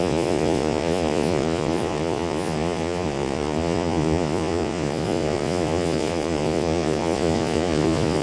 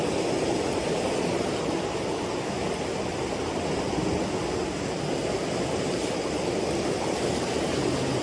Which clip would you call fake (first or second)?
first